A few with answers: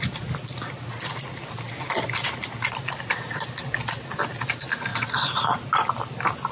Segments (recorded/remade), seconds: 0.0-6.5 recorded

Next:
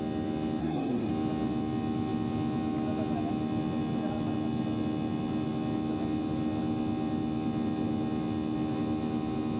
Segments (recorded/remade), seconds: 0.0-0.6 recorded; 0.6-1.1 remade; 1.1-9.6 recorded

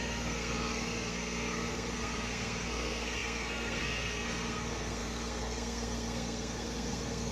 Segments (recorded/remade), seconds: 0.0-7.3 remade

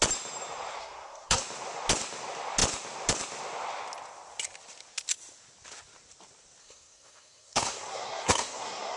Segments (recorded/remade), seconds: 0.0-0.8 recorded; 0.8-1.4 remade; 1.4-6.6 recorded; 6.6-9.0 remade

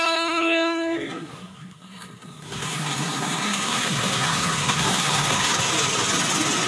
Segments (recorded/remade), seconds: 0.0-5.7 remade; 5.7-6.7 recorded